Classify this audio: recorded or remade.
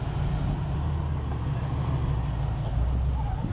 recorded